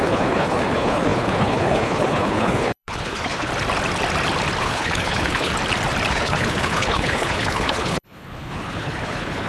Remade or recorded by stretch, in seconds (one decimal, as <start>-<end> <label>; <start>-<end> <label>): 0.0-3.5 remade; 3.5-4.6 recorded; 4.6-5.5 remade; 5.5-6.1 recorded; 6.1-9.5 remade